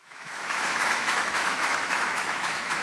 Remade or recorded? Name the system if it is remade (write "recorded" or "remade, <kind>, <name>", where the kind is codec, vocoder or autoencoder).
remade, autoencoder, DAC-VAE